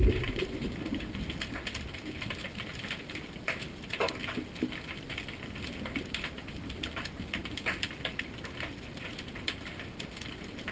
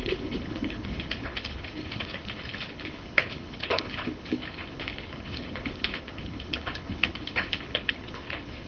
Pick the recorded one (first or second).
first